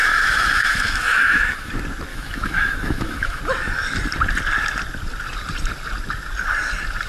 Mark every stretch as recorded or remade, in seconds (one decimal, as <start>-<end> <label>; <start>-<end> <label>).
0.0-1.7 remade; 1.7-2.1 recorded; 2.1-3.4 remade; 3.4-7.1 recorded